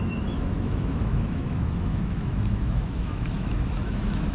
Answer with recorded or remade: remade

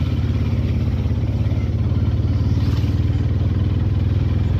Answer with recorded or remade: recorded